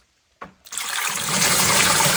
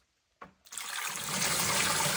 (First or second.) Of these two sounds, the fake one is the first